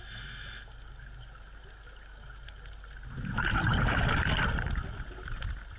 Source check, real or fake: real